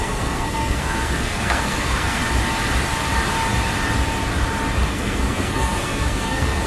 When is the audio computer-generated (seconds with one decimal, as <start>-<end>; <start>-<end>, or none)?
0.0-2.2; 4.9-6.7

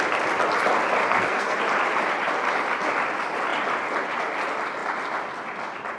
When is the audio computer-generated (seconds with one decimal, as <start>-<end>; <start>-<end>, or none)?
1.0-1.6

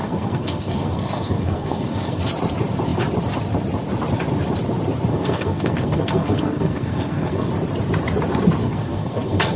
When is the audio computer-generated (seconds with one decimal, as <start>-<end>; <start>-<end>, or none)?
0.0-2.2; 5.1-7.5; 8.6-9.6